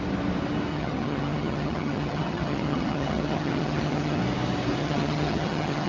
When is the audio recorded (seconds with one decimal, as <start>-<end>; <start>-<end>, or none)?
0.0-0.7; 4.2-4.8